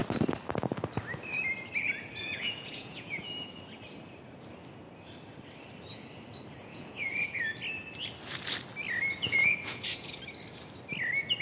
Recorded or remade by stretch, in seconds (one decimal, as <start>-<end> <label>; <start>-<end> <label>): 0.0-2.2 recorded; 2.2-3.6 remade; 3.6-6.6 recorded; 6.6-7.4 remade; 7.4-9.1 recorded; 9.1-10.2 remade; 10.2-11.4 recorded